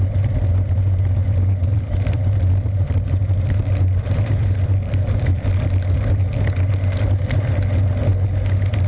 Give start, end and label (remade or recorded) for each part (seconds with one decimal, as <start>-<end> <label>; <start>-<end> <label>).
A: 0.0-1.7 recorded; 1.7-6.3 remade; 6.3-8.9 recorded